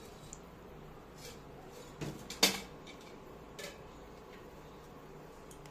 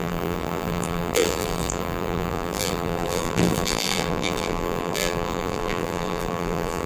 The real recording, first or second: first